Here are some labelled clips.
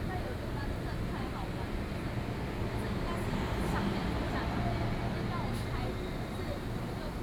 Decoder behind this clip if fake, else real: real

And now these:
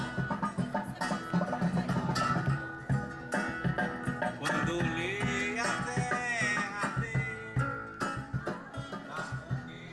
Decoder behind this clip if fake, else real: real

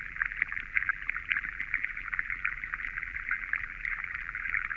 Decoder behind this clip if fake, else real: fake, vocoder, BigVGAN v2